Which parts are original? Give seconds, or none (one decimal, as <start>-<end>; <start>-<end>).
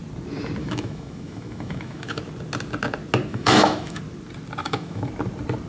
0.0-0.6; 2.2-3.3; 4.0-4.6; 5.1-5.7